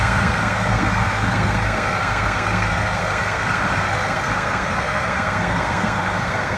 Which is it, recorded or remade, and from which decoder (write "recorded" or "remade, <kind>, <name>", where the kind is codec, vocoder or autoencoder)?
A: remade, codec, SNAC